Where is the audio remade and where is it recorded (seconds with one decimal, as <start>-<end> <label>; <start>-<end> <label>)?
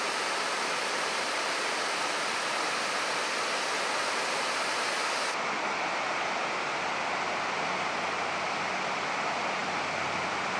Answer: 0.0-10.6 recorded